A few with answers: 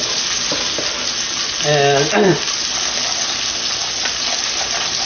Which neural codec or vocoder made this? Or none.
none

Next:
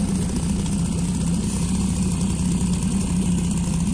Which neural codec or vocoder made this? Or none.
none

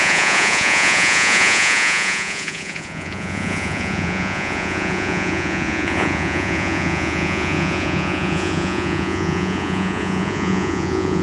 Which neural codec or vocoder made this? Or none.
vocoder, Vocos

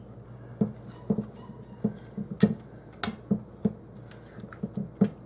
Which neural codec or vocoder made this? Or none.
none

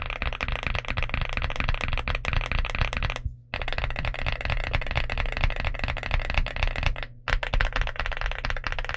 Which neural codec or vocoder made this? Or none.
none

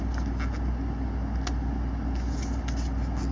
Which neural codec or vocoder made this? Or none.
none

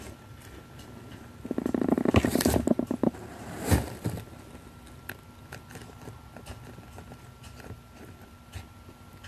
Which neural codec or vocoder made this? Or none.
none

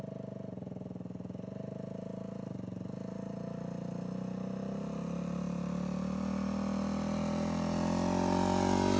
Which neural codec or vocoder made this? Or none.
none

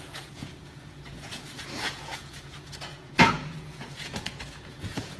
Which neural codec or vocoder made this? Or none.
vocoder, Vocos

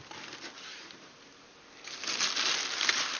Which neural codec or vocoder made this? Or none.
none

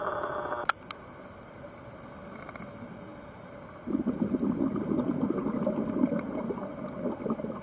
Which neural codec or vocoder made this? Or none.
none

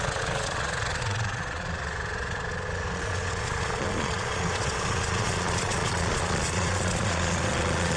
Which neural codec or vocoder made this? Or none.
vocoder, Vocos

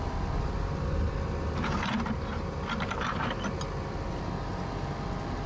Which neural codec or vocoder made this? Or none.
none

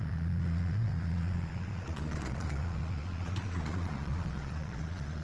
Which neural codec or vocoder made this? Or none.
vocoder, Vocos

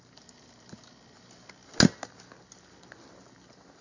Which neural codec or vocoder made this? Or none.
none